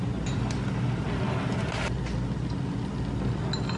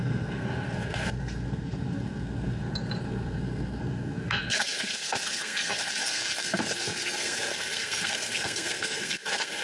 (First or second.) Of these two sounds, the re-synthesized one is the second